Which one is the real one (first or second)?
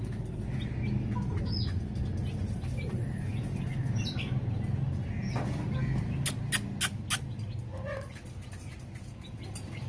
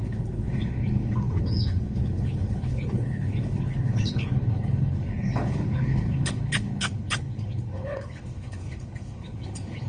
first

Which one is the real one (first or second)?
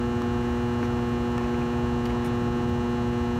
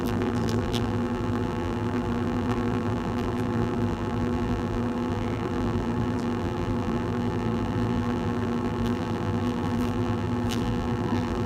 first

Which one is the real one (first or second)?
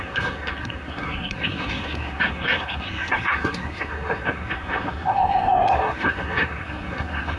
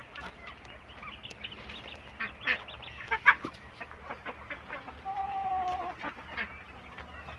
second